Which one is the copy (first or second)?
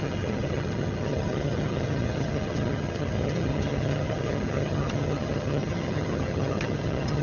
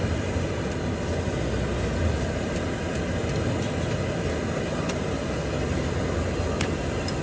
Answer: first